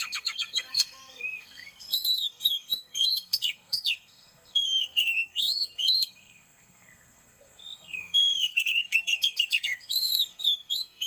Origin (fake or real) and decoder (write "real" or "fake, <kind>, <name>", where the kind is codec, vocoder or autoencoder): fake, codec, SNAC